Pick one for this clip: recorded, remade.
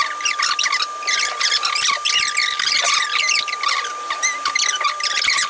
recorded